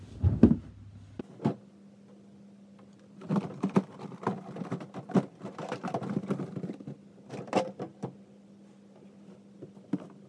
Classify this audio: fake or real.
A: real